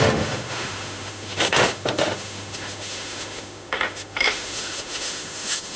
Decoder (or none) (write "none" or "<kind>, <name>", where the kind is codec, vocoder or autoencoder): autoencoder, DAC-VAE